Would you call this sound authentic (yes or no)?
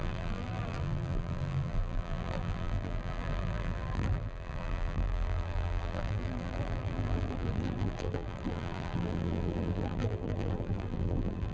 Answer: no